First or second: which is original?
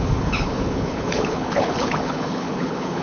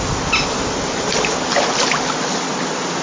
second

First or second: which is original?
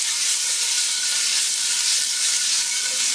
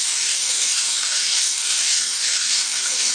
first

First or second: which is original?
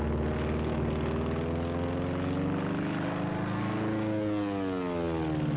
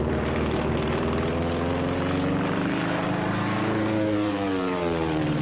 first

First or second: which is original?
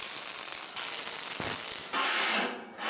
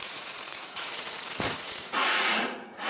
first